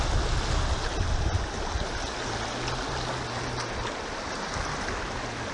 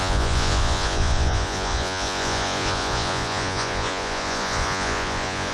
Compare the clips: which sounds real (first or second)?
first